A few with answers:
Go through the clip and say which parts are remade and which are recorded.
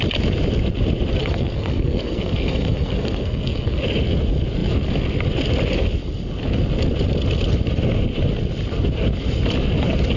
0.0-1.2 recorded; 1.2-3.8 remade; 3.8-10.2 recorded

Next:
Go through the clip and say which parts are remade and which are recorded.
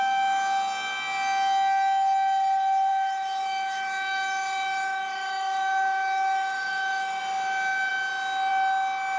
0.0-2.9 recorded; 2.9-7.2 remade; 7.2-9.2 recorded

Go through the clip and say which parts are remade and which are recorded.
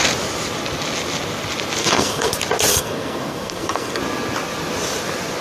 0.0-1.8 recorded; 1.8-2.3 remade; 2.3-2.7 recorded; 2.7-4.0 remade; 4.0-5.4 recorded